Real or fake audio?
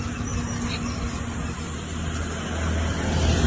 real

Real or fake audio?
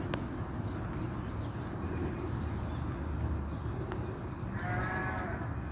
real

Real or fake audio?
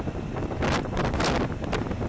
real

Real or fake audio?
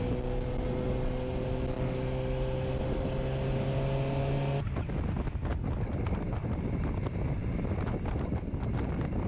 real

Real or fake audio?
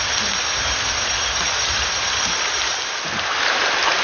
real